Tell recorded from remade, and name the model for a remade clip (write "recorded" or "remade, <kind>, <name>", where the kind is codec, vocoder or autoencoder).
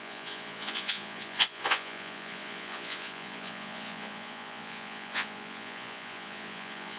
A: remade, vocoder, Vocos